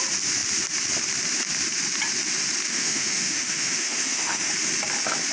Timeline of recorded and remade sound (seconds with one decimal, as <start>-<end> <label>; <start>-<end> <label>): 0.0-2.7 recorded; 2.7-4.5 remade; 4.5-5.3 recorded